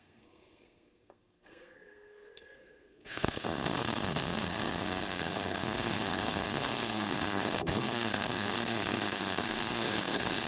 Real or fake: fake